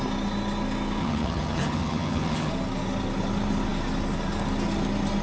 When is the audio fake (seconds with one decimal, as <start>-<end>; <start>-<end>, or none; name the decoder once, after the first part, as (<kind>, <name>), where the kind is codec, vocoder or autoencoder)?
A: 1.0-2.5 (vocoder, HiFi-GAN)